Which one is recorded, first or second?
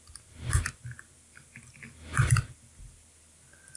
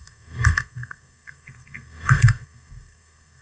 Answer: first